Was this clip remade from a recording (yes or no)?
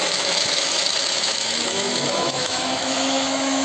yes